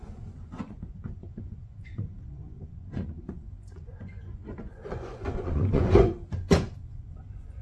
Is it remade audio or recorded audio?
remade